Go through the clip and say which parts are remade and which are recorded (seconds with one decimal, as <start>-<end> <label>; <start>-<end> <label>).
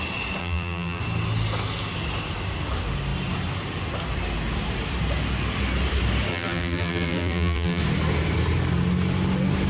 0.0-0.4 recorded; 0.4-1.0 remade; 1.0-6.3 recorded; 6.3-7.8 remade; 7.8-9.7 recorded